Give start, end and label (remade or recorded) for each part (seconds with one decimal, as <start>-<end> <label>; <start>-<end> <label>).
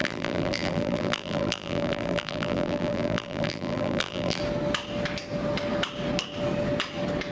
0.0-4.4 remade; 4.4-7.3 recorded